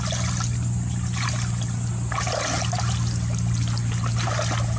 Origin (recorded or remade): recorded